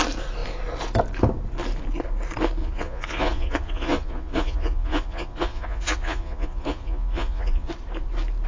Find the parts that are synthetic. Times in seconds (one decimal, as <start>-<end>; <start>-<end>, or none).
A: 2.6-7.7